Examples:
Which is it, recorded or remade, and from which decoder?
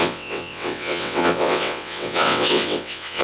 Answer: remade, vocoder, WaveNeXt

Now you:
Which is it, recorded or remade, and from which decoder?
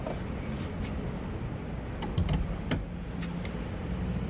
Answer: recorded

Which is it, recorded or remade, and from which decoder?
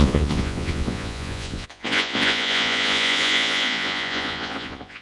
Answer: remade, vocoder, Vocos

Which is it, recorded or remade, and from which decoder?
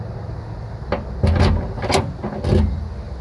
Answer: recorded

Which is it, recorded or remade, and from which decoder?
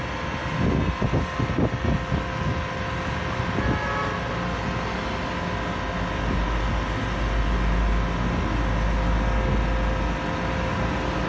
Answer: recorded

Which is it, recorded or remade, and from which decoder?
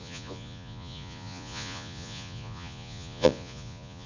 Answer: remade, vocoder, Vocos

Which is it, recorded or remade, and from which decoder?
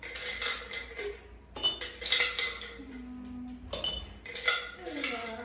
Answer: recorded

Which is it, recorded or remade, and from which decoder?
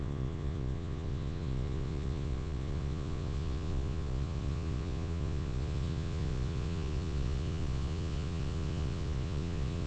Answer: remade, vocoder, Vocos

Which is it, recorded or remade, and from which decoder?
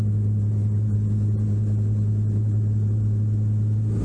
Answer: recorded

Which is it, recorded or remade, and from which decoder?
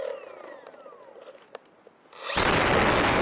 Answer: recorded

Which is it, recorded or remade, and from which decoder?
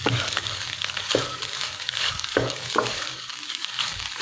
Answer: remade, codec, DAC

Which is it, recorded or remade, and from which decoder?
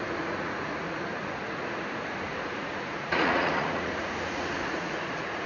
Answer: remade, vocoder, Vocos